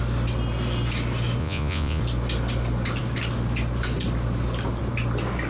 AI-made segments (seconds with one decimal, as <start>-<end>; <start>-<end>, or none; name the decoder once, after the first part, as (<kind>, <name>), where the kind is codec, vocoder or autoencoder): 1.4-2.0 (vocoder, Vocos)